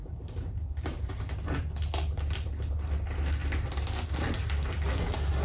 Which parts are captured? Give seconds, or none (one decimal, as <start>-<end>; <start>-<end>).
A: 1.2-5.4